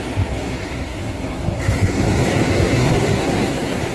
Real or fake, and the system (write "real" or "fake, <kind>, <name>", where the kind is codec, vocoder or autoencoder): fake, codec, SNAC